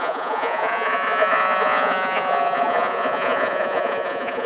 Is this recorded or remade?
remade